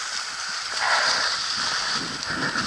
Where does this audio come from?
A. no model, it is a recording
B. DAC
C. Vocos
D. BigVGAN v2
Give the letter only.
A